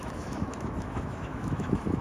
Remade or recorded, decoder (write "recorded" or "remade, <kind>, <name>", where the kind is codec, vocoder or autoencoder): remade, autoencoder, DAC-VAE